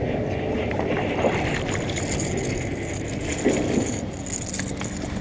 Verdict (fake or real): real